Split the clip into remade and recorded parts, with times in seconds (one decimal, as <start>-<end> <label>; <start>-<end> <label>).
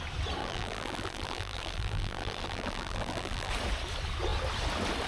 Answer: 0.0-0.4 recorded; 0.4-3.5 remade; 3.5-5.1 recorded